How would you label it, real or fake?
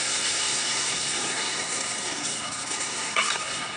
fake